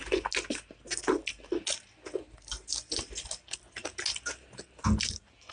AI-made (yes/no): no